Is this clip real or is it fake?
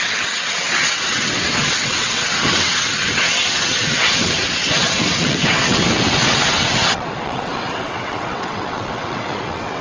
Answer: fake